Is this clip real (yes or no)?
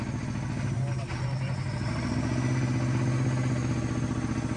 yes